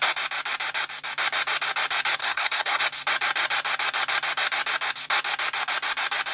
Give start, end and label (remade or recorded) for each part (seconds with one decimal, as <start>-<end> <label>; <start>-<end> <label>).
0.0-2.2 recorded; 2.2-2.8 remade; 2.8-6.3 recorded